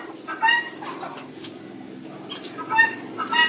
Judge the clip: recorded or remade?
recorded